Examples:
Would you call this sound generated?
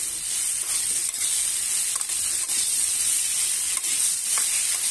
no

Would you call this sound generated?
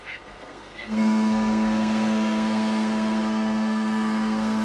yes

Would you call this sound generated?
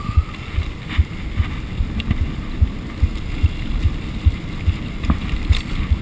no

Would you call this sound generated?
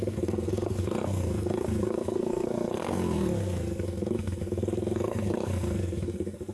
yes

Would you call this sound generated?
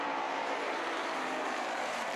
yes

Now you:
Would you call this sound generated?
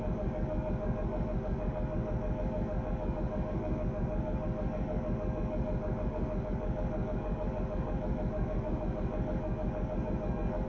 yes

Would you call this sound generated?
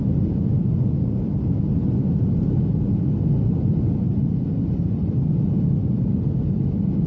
no